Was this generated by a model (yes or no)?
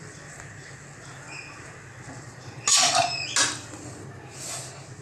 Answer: no